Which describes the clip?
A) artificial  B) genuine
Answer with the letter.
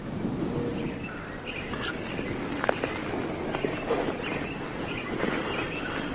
B